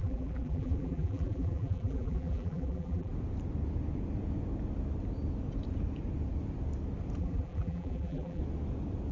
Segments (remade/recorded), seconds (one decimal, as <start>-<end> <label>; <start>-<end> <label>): 0.0-3.1 remade; 3.1-7.2 recorded; 7.2-8.4 remade; 8.4-9.1 recorded